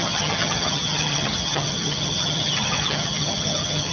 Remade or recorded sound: remade